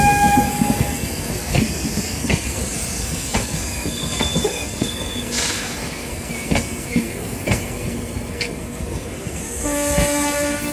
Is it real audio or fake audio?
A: fake